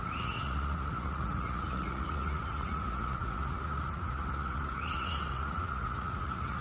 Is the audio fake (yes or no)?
yes